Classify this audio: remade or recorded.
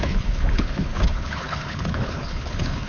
remade